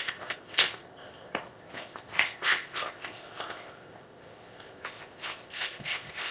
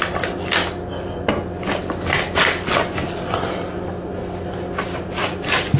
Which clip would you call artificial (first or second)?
first